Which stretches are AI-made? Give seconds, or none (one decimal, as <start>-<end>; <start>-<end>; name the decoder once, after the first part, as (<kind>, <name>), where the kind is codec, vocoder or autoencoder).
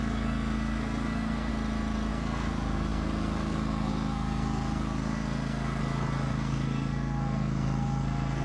0.0-1.5 (codec, SNAC); 2.1-5.8; 6.3-8.4